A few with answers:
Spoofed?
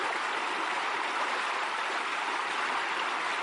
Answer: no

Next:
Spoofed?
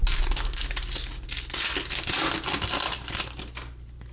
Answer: no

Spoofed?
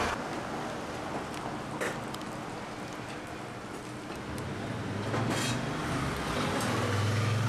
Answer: no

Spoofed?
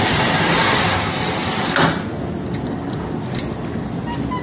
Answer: no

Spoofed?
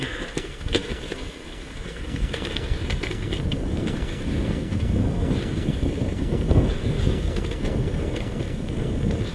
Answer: yes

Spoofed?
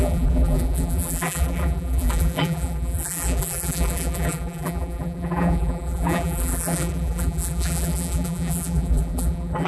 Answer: yes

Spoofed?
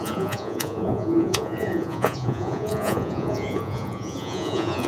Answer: yes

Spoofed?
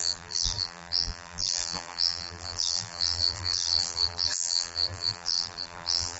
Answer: yes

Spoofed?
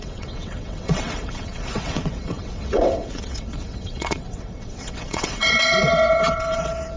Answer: yes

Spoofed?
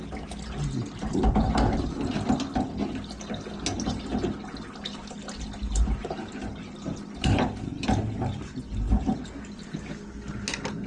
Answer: no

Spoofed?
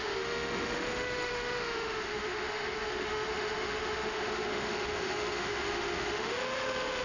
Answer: yes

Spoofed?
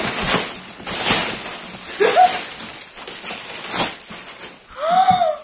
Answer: no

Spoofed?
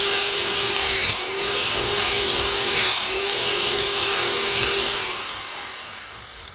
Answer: yes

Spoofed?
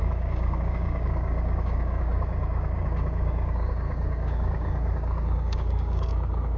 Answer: yes